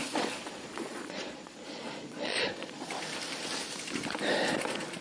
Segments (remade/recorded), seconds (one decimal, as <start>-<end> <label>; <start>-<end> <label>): 0.0-2.9 remade; 2.9-5.0 recorded

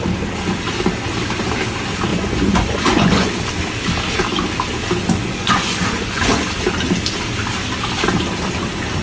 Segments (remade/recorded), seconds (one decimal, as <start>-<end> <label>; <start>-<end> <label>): 0.0-2.1 recorded; 2.1-3.3 remade; 3.3-5.2 recorded; 5.2-6.3 remade; 6.3-9.0 recorded